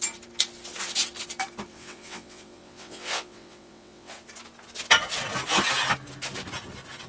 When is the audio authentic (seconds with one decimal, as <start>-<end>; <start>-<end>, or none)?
0.0-1.7; 4.1-7.1